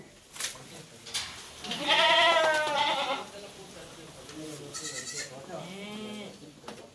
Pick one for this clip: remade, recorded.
recorded